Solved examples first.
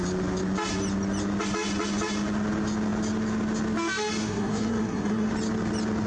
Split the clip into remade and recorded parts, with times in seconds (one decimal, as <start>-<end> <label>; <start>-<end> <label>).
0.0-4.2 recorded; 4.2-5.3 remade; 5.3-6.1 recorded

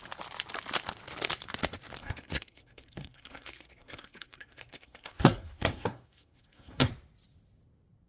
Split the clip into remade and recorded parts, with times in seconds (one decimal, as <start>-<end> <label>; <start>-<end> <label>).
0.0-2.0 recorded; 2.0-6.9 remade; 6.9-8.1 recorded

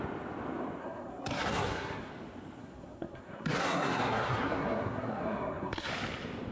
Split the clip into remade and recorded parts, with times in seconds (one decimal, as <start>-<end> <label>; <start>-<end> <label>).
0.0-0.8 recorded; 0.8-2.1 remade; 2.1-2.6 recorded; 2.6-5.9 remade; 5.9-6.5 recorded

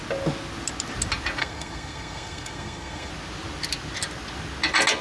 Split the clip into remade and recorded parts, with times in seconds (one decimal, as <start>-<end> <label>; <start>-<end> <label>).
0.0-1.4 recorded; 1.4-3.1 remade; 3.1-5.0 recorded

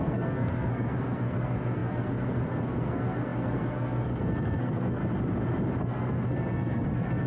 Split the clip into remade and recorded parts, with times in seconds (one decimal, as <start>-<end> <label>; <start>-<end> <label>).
0.0-5.0 remade; 5.0-5.8 recorded; 5.8-7.3 remade

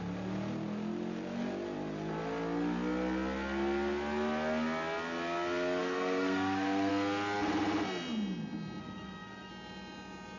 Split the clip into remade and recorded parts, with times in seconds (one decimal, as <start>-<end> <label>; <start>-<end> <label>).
0.0-5.8 recorded; 5.8-6.9 remade; 6.9-8.8 recorded; 8.8-9.5 remade; 9.5-10.4 recorded

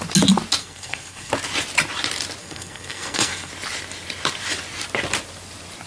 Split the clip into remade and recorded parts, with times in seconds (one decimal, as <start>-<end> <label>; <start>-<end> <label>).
0.0-0.6 recorded; 0.6-1.3 remade; 1.3-2.4 recorded; 2.4-3.5 remade; 3.5-5.9 recorded

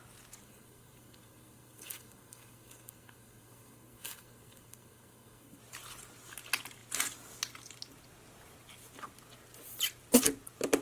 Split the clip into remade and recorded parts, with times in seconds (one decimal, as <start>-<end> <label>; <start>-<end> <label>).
0.0-0.4 recorded; 0.4-5.6 remade; 5.6-10.8 recorded